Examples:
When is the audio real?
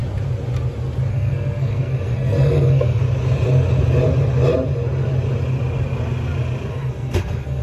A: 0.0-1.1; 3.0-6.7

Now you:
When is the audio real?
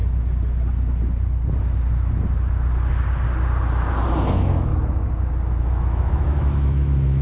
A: 0.0-4.3; 4.7-5.6